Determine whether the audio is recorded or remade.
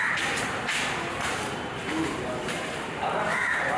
remade